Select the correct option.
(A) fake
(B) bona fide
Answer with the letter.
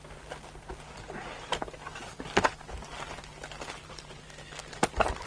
B